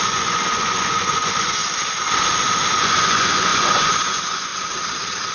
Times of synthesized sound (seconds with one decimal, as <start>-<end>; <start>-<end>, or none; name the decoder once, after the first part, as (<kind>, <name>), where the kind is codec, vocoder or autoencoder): 0.0-1.6 (vocoder, Vocos); 2.8-4.5